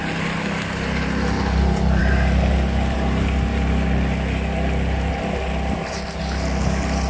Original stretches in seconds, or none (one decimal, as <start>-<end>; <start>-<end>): 0.0-7.1